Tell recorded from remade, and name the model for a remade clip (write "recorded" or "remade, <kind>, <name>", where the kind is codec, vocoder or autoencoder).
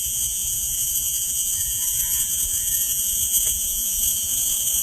remade, vocoder, Vocos